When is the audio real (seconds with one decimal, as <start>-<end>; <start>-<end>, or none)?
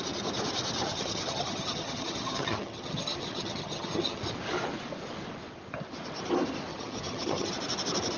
0.0-0.9; 4.2-6.7; 7.5-8.2